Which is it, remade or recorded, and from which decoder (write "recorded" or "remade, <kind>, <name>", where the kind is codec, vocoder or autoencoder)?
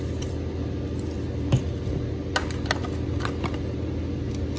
recorded